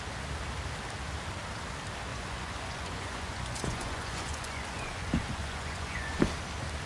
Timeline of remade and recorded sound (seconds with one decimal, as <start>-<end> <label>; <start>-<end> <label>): 0.0-2.1 recorded; 2.1-6.2 remade; 6.2-6.9 recorded